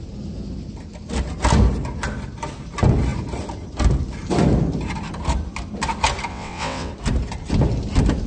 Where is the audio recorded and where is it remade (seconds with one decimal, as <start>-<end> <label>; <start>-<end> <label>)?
0.0-6.3 recorded; 6.3-6.9 remade; 6.9-8.3 recorded